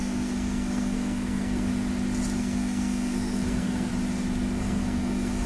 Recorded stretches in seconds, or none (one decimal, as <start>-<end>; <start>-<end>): 1.7-2.4; 3.9-4.6